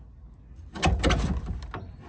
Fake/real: real